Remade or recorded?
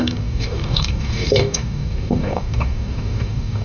remade